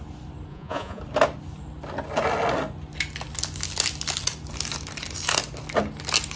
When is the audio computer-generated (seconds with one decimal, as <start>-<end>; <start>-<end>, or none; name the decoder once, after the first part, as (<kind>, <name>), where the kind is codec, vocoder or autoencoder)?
0.5-1.0 (vocoder, Vocos)